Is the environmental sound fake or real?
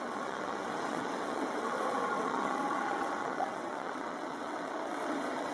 fake